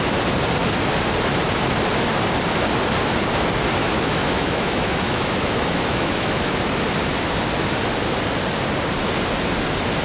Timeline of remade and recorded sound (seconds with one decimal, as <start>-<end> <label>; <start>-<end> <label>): 0.0-3.8 recorded; 3.8-6.4 remade; 6.4-10.0 recorded